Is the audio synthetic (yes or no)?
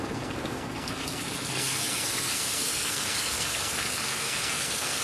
yes